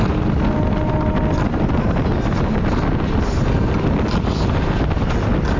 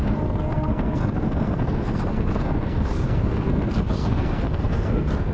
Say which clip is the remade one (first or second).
second